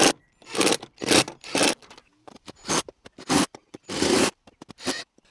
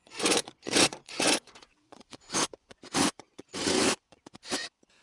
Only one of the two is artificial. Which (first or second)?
second